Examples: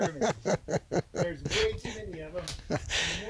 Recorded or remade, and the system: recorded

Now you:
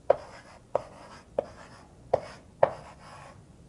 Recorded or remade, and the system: remade, vocoder, Vocos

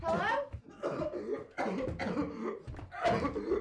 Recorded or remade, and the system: recorded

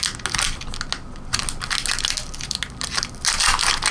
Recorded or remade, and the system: recorded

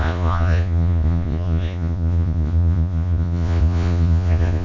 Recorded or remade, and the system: remade, vocoder, Vocos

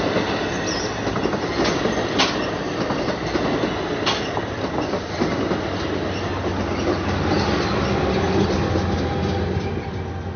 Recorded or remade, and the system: recorded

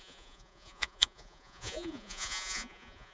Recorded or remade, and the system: remade, vocoder, Vocos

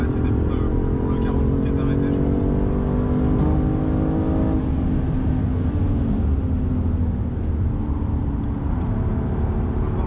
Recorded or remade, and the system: recorded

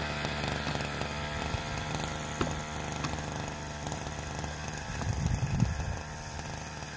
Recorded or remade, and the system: recorded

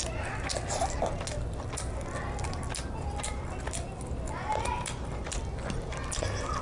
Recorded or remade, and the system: recorded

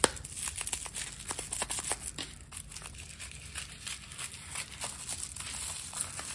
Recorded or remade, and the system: recorded